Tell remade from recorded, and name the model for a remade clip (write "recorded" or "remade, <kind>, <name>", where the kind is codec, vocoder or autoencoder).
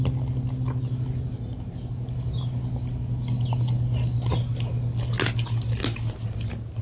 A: recorded